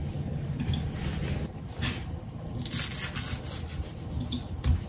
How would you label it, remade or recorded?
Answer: recorded